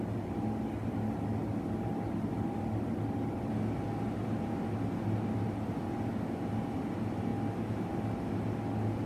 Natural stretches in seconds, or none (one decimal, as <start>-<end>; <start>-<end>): 0.0-9.1